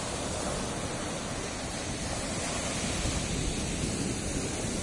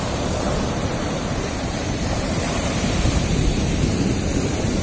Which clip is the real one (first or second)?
first